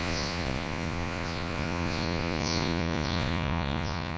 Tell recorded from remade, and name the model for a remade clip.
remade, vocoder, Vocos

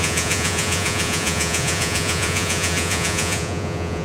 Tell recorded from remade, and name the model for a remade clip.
remade, vocoder, Vocos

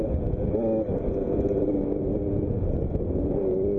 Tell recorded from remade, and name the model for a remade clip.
recorded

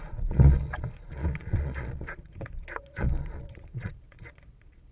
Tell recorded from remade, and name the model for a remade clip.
remade, vocoder, Vocos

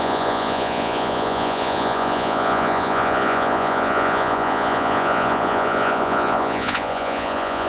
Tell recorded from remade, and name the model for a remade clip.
remade, vocoder, Vocos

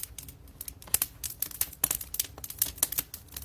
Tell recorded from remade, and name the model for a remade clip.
recorded